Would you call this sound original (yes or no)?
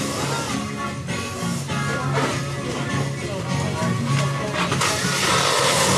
yes